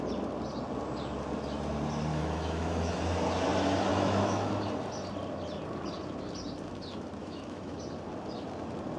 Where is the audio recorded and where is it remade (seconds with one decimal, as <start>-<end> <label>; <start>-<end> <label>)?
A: 0.0-2.1 recorded; 2.1-2.9 remade; 2.9-3.9 recorded; 3.9-4.5 remade; 4.5-7.2 recorded; 7.2-7.8 remade; 7.8-9.0 recorded